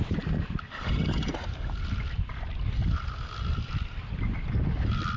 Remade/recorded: recorded